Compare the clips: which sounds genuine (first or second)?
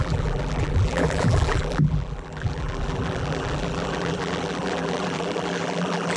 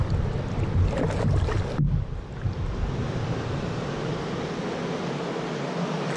second